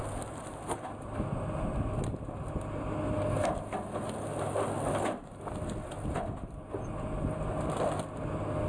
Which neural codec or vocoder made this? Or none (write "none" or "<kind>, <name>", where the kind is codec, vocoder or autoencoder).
none